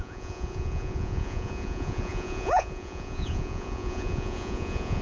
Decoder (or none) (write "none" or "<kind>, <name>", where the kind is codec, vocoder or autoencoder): vocoder, Vocos